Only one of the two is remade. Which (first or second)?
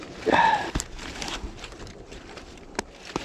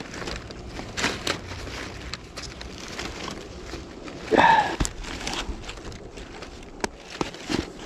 first